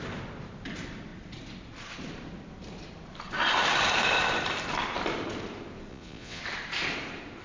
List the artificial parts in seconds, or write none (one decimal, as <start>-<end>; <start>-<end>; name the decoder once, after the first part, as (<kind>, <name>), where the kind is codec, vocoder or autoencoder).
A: 5.9-6.4 (vocoder, Vocos)